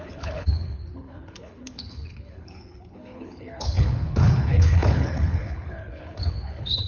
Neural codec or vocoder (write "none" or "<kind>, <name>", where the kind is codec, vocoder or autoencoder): codec, HILCodec